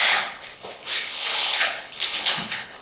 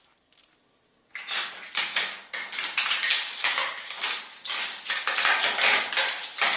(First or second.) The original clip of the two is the second